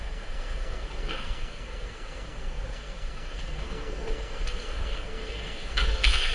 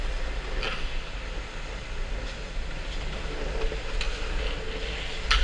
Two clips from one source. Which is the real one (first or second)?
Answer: second